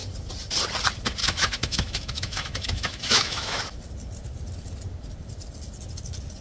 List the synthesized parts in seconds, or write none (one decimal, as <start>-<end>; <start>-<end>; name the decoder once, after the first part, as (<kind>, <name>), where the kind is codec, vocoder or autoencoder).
1.2-3.6 (autoencoder, DAC-VAE)